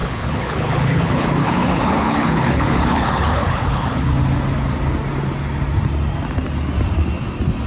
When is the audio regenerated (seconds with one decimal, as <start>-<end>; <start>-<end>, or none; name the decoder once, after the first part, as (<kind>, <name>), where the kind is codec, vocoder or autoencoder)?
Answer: 0.0-4.1 (codec, HILCodec)